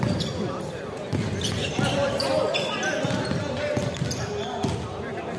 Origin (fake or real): real